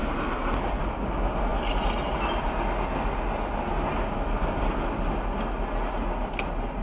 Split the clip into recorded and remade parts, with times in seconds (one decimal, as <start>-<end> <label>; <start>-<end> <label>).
0.0-6.8 recorded